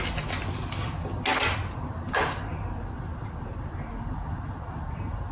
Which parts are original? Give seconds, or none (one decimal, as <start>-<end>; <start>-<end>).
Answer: 0.0-3.2; 3.9-5.3